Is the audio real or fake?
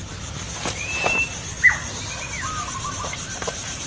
real